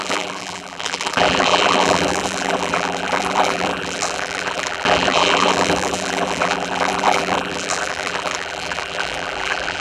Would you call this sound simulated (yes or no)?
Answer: yes